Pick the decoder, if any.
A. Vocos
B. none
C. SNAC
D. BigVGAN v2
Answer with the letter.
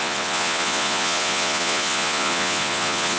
A